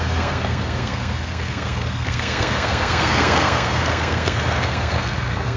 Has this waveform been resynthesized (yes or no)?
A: yes